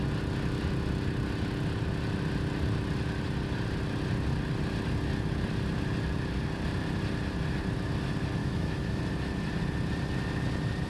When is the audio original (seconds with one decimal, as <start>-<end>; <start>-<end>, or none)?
0.0-8.4; 9.0-10.9